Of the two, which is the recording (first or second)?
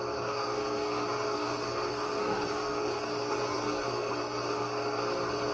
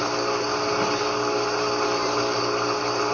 second